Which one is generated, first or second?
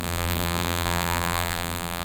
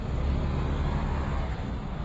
first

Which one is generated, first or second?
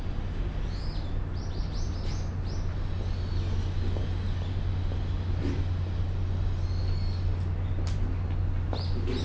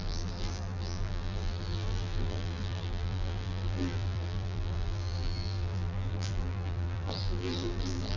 second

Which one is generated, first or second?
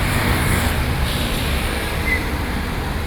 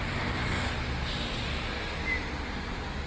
first